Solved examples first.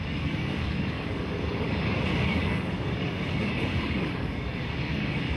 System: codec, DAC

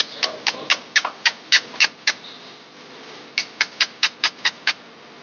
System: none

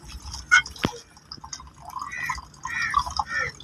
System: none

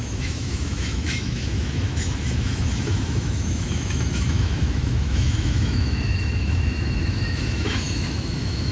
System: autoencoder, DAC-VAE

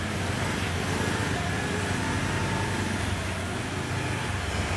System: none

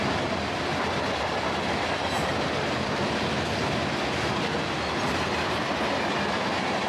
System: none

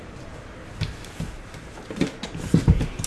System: vocoder, BigVGAN v2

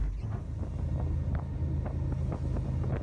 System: none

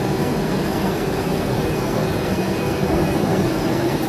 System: codec, SNAC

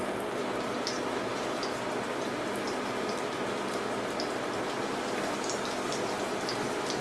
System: none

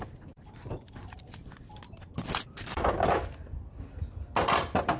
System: none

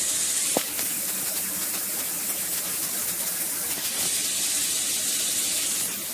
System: vocoder, BigVGAN v2